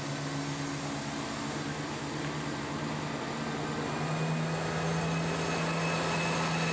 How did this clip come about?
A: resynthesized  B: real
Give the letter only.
B